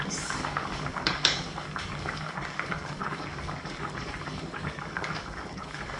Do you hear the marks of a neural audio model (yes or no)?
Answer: yes